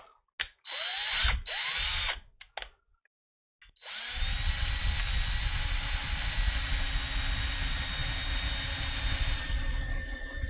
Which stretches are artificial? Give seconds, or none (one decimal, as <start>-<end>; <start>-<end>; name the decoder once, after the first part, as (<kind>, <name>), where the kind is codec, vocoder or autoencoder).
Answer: none

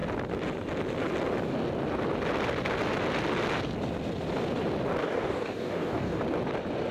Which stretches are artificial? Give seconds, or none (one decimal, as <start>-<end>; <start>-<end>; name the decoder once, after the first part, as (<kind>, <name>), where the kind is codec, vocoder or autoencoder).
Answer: 5.0-6.2 (codec, DAC)